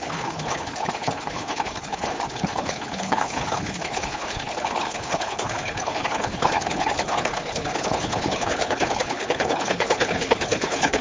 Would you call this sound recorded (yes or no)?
no